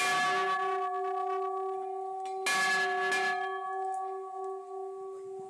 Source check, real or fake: real